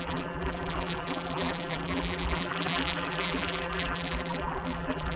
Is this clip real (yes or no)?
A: no